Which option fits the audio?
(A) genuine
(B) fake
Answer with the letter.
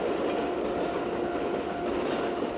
A